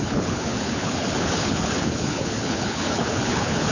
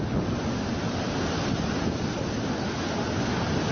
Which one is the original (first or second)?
second